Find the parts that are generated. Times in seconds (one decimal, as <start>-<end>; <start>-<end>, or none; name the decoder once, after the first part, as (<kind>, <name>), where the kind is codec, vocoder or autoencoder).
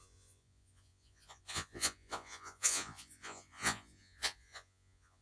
0.0-5.2 (vocoder, Vocos)